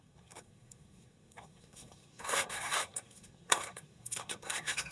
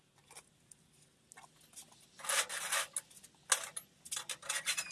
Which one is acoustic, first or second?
second